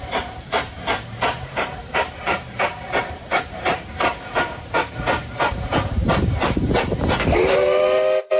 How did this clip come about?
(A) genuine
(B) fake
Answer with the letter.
B